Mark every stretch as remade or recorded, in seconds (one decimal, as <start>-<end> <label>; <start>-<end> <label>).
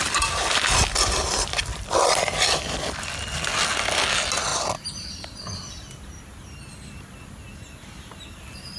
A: 0.0-1.7 recorded; 1.7-3.1 remade; 3.1-4.5 recorded; 4.5-5.1 remade; 5.1-8.8 recorded